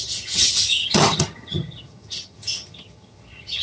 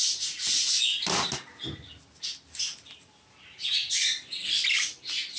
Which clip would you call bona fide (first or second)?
second